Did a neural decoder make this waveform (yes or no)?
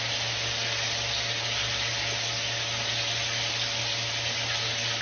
no